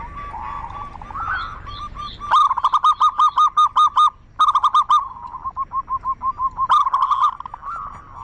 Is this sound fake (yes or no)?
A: no